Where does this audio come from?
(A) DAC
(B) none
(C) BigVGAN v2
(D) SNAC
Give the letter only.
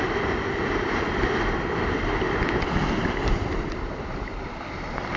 C